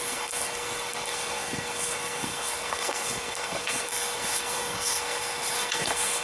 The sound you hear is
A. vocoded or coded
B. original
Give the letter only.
A